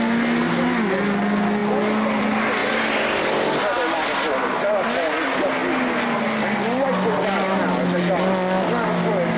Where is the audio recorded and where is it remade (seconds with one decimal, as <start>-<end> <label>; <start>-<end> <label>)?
0.0-2.6 recorded; 2.6-3.3 remade; 3.3-9.4 recorded